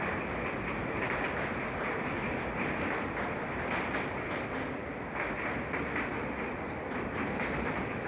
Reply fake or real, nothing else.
real